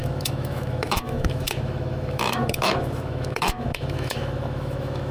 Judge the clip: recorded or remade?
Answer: remade